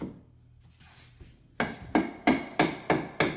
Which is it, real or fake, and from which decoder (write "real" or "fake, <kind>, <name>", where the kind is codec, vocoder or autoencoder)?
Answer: real